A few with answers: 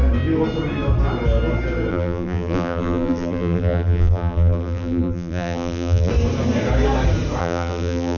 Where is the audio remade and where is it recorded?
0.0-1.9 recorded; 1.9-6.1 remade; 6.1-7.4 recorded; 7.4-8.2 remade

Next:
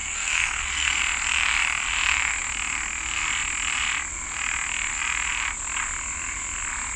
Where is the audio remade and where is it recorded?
0.0-1.0 remade; 1.0-7.0 recorded